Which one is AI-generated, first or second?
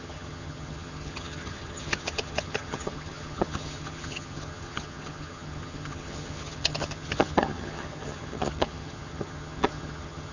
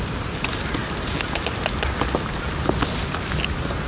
first